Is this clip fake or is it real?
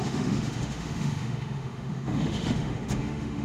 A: fake